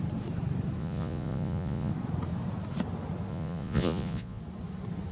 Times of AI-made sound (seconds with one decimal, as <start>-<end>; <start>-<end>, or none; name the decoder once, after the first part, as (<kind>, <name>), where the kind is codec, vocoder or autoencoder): 0.8-1.9 (vocoder, Vocos); 3.3-4.4